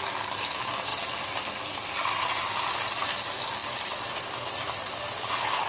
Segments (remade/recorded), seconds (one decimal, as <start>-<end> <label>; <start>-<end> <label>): 0.0-5.7 recorded